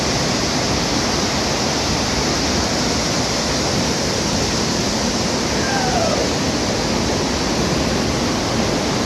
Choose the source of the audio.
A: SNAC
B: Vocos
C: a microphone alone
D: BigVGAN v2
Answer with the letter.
C